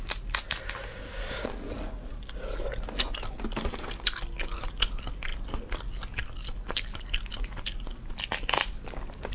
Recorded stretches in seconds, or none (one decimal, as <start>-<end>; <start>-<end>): 0.0-9.3